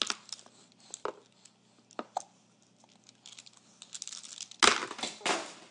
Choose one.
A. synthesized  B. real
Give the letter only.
B